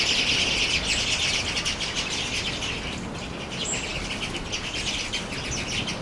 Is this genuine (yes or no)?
yes